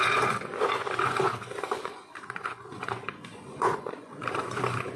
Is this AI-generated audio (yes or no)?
yes